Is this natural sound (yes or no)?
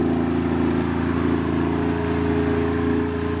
yes